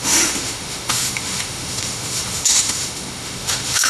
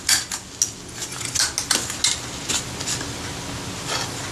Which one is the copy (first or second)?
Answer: first